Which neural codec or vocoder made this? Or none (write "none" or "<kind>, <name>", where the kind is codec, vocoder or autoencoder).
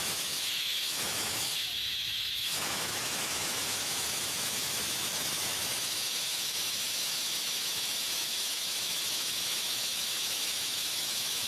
autoencoder, DAC-VAE